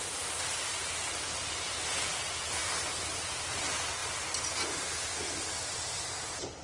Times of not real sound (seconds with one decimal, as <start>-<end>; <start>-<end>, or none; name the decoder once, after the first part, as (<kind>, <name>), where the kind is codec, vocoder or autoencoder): none